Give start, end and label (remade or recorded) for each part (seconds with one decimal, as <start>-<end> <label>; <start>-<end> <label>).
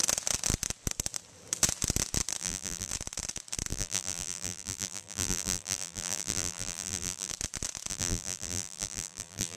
0.0-2.4 recorded; 2.4-2.9 remade; 2.9-3.7 recorded; 3.7-7.3 remade; 7.3-7.9 recorded; 7.9-9.6 remade